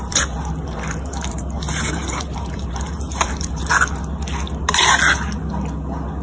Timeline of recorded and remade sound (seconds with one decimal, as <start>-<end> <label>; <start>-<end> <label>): 0.0-3.7 remade; 3.7-6.2 recorded

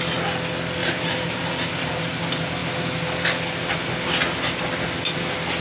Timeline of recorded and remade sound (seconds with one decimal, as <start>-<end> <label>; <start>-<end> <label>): 0.0-0.8 recorded; 0.8-2.2 remade; 2.2-5.6 recorded

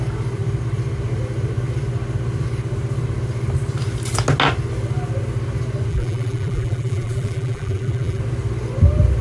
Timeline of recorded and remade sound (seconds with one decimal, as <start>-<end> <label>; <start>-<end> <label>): 0.0-5.9 recorded; 5.9-8.2 remade; 8.2-9.2 recorded

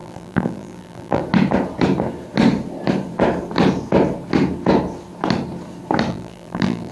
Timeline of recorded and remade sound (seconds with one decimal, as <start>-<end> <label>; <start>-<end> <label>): 0.0-1.2 remade; 1.2-6.1 recorded; 6.1-6.9 remade

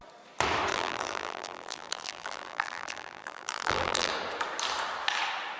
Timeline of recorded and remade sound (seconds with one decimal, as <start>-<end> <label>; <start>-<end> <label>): 0.0-0.7 recorded; 0.7-4.1 remade; 4.1-5.6 recorded

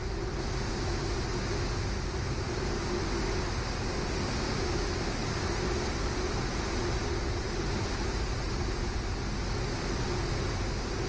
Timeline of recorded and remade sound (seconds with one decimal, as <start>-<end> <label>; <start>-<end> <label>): 0.0-5.2 recorded; 5.2-9.1 remade; 9.1-11.1 recorded